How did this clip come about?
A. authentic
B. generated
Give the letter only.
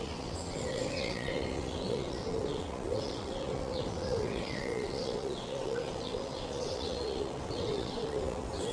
B